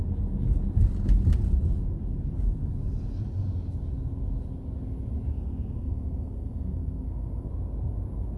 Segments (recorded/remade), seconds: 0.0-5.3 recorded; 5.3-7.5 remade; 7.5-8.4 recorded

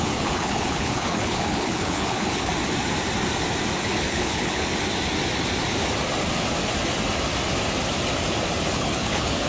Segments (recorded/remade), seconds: 0.0-2.5 remade; 2.5-3.8 recorded; 3.8-4.6 remade; 4.6-8.7 recorded; 8.7-9.5 remade

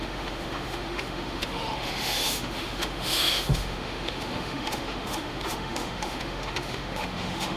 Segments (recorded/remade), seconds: 0.0-7.6 remade

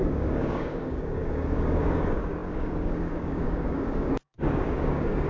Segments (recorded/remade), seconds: 0.0-5.3 remade